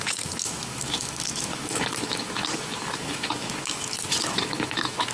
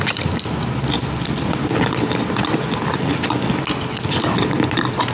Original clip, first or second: second